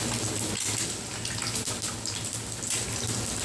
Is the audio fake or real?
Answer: real